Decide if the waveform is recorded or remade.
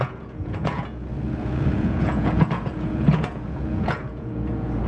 remade